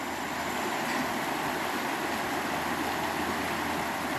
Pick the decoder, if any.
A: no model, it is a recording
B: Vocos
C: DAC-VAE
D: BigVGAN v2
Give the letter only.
A